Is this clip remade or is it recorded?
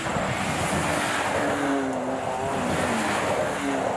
recorded